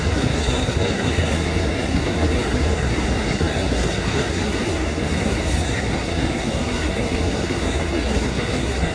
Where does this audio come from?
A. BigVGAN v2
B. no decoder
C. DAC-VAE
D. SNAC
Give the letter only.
D